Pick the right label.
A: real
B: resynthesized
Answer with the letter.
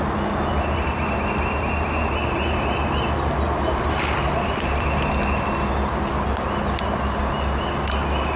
A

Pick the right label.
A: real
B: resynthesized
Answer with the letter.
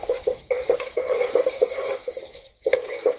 B